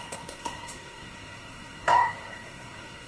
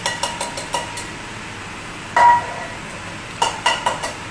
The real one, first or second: second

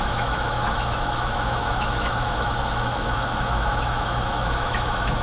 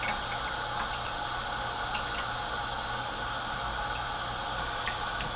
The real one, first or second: second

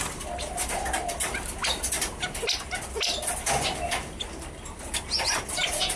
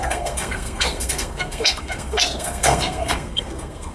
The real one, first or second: first